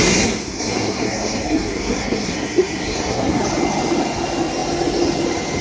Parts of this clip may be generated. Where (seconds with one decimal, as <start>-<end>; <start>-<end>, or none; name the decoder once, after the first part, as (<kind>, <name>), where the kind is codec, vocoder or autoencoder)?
0.0-3.4 (codec, SNAC)